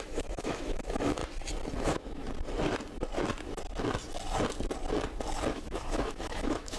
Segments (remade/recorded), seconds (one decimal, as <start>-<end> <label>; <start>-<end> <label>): 0.0-1.2 remade; 1.2-1.8 recorded; 1.8-2.2 remade; 2.2-5.5 recorded; 5.5-6.8 remade